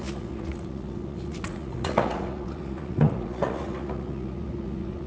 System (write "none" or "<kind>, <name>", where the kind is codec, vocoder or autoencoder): vocoder, Vocos